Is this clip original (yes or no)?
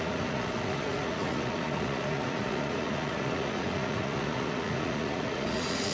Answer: no